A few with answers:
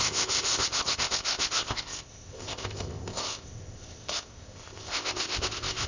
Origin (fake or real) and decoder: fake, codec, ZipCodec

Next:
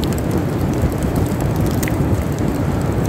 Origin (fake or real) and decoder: fake, vocoder, BigVGAN v2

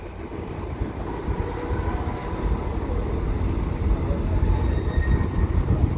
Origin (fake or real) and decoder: real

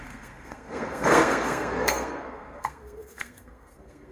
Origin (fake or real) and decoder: fake, codec, SNAC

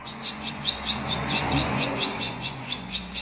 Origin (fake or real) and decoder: fake, vocoder, Vocos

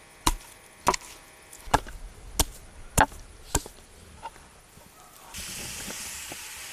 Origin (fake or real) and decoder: real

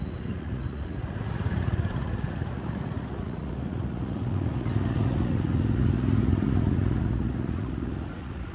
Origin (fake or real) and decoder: fake, vocoder, Vocos